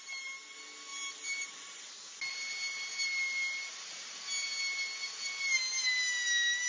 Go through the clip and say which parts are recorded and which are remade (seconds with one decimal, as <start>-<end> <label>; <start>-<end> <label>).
0.0-0.9 recorded; 0.9-2.2 remade; 2.2-6.7 recorded